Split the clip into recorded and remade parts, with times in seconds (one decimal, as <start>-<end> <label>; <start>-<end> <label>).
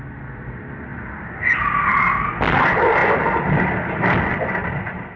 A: 0.0-5.2 recorded